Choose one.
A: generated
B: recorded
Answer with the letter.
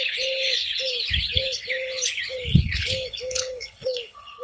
A